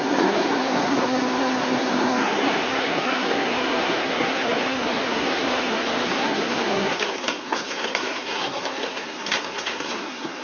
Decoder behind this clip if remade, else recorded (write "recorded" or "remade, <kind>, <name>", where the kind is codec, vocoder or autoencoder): remade, codec, SNAC